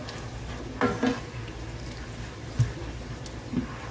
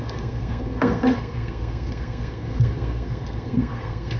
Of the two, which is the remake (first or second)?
second